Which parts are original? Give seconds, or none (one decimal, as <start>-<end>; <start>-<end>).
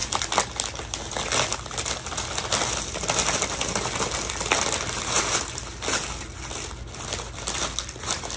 0.0-8.4